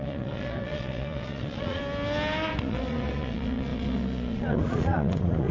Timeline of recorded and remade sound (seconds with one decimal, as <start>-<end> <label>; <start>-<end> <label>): 0.0-1.8 remade; 1.8-2.6 recorded; 2.6-5.5 remade